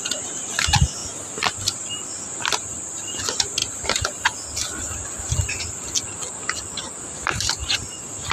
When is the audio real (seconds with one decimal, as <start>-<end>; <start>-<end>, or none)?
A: 0.0-8.3